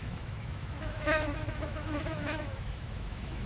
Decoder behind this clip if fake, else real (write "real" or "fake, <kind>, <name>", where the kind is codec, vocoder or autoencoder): fake, autoencoder, DAC-VAE